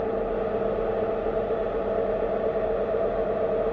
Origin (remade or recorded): recorded